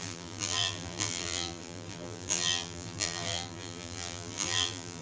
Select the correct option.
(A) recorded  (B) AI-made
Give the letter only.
B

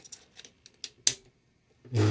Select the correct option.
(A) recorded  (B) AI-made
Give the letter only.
A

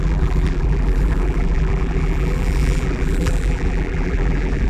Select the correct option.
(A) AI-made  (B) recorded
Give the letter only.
A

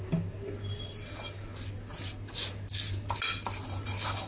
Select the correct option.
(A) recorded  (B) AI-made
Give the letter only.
A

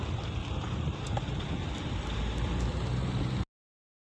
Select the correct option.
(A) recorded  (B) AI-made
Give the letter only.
A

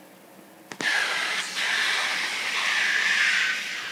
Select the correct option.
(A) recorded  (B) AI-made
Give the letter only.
A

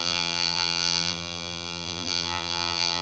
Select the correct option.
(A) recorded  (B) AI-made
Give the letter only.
B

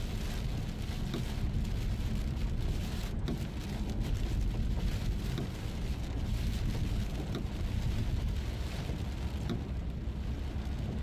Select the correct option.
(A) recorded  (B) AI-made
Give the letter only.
A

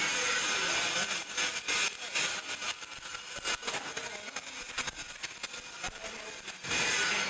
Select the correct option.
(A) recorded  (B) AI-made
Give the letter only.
A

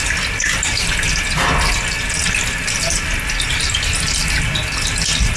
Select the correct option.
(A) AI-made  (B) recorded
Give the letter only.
B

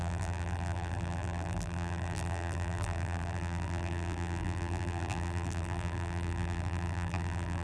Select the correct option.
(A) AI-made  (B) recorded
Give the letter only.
A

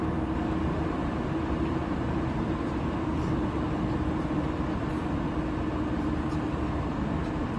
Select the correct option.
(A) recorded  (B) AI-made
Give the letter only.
A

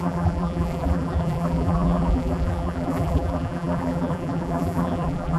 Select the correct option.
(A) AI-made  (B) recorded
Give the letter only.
A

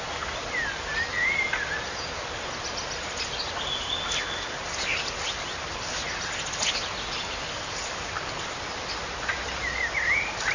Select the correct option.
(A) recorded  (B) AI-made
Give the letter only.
A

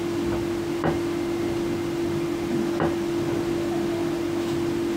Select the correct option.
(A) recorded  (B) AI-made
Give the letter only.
A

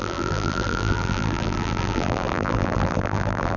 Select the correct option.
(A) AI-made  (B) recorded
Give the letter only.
A